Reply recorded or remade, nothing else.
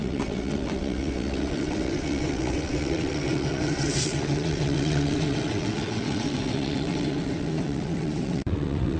remade